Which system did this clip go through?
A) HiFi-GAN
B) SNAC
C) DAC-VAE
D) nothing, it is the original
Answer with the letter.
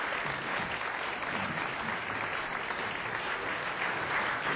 D